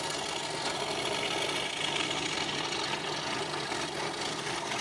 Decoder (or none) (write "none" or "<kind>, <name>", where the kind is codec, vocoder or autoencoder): none